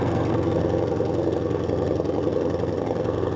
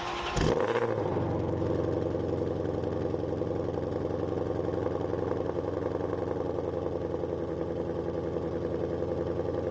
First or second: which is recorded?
second